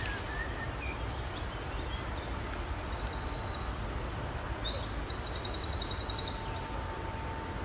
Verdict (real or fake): real